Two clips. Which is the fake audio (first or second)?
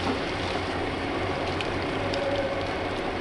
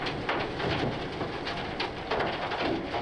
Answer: first